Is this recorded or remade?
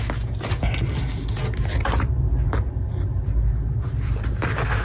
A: recorded